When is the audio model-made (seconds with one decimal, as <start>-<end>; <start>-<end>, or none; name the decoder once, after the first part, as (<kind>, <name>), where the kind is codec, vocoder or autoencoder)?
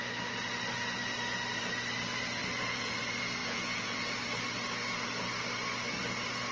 2.4-3.0 (vocoder, Vocos); 3.4-4.1